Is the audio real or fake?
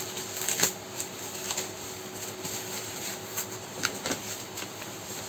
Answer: real